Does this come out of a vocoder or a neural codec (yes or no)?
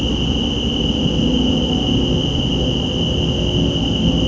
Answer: no